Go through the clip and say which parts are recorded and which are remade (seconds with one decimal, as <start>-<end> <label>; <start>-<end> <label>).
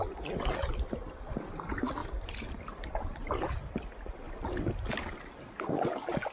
0.0-2.0 recorded; 2.0-5.5 remade; 5.5-6.3 recorded